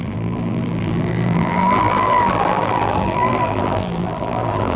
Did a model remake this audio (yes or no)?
yes